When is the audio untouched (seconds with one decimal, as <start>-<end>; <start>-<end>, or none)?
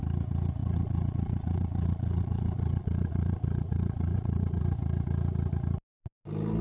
0.0-0.6; 4.6-6.6